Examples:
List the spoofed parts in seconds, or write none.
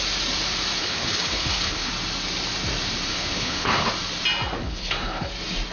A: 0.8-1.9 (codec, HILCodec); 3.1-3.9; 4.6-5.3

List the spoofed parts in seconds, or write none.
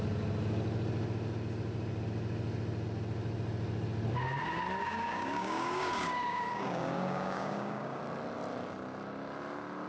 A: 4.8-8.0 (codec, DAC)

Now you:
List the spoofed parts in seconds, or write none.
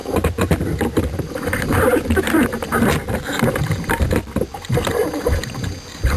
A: 0.0-3.7 (vocoder, BigVGAN v2)